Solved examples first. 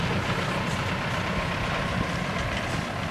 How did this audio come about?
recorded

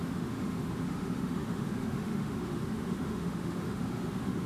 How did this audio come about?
remade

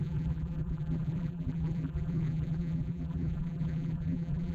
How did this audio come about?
remade